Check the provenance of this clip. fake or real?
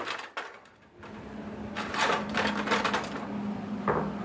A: real